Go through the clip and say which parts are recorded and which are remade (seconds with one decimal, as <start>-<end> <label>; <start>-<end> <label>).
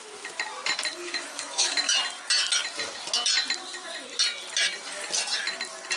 0.0-1.0 recorded; 1.0-2.0 remade; 2.0-6.0 recorded